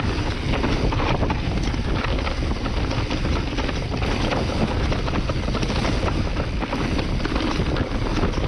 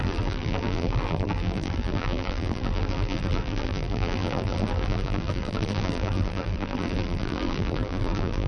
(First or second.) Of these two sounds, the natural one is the first